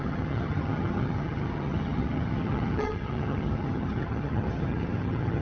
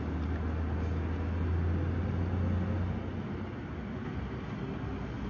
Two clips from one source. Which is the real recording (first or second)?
second